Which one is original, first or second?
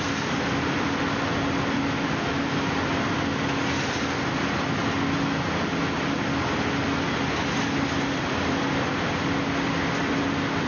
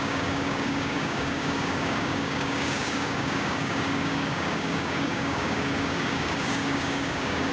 first